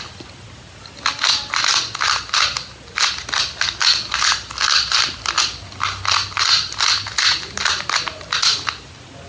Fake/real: real